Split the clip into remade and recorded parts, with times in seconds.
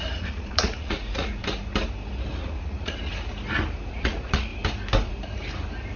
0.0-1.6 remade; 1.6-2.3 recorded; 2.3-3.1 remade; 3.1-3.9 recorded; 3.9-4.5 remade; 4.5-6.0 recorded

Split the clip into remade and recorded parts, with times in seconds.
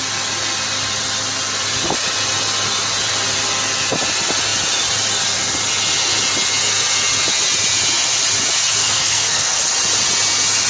0.0-8.8 recorded; 8.8-9.6 remade; 9.6-10.7 recorded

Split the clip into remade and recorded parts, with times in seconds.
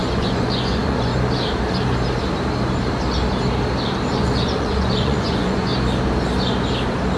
0.0-1.1 remade; 1.1-4.2 recorded; 4.2-5.7 remade; 5.7-7.2 recorded